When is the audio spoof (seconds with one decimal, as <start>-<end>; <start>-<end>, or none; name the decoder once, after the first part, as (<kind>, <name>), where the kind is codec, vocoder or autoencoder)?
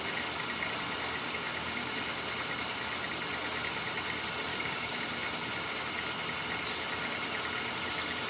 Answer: 1.2-1.9 (codec, DAC); 4.5-5.0